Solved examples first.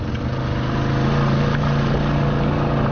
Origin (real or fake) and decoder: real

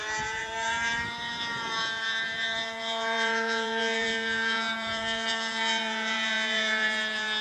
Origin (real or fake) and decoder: fake, vocoder, Vocos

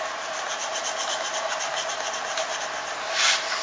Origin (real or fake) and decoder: real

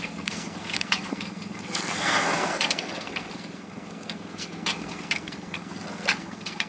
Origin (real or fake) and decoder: fake, codec, SNAC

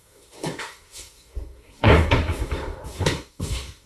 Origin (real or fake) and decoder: fake, codec, SNAC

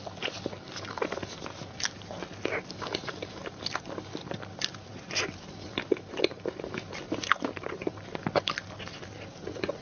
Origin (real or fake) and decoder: real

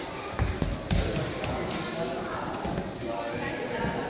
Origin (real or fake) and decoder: real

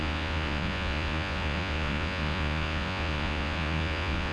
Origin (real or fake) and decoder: fake, vocoder, Vocos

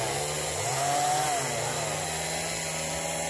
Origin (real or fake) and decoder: real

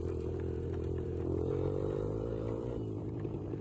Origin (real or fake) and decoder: fake, vocoder, BigVGAN v2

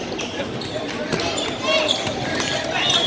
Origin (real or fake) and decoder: real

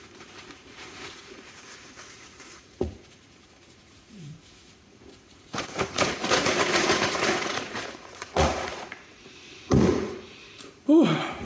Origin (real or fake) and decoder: fake, vocoder, Vocos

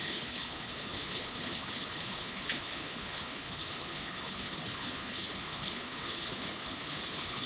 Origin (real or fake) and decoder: fake, codec, HILCodec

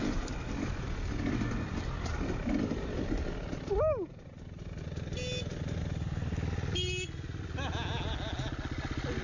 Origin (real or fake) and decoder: real